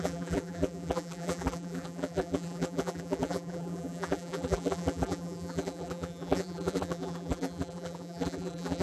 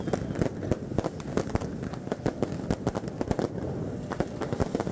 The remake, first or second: first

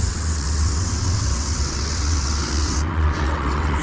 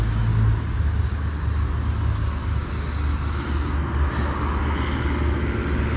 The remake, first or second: first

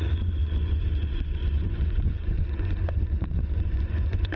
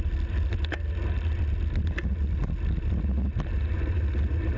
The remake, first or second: first